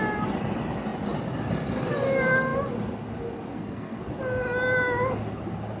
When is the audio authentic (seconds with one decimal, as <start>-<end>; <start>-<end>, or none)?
0.0-3.5; 4.0-5.8